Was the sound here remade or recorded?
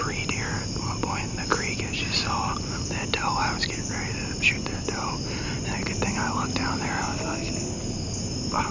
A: recorded